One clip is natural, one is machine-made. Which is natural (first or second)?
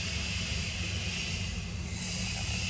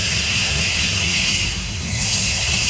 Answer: first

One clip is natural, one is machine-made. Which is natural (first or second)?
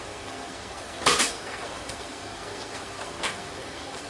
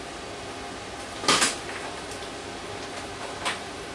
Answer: second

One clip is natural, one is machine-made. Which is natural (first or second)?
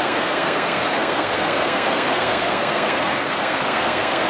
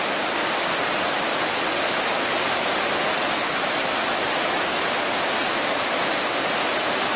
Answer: second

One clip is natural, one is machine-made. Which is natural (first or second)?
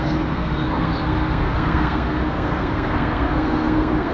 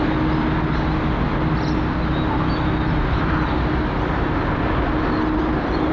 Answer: second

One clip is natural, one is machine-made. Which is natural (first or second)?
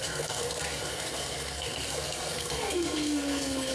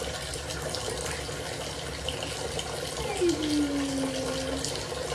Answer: second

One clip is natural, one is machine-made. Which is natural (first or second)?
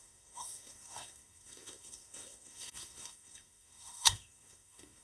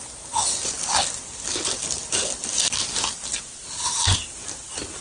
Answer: second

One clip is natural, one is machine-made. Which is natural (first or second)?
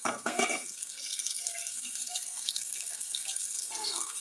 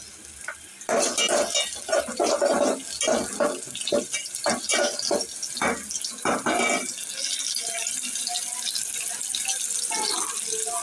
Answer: second